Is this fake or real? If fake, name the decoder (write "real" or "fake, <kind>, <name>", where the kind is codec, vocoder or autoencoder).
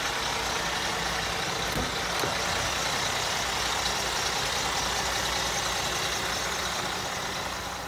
real